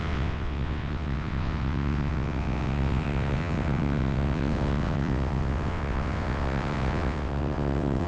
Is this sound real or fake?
fake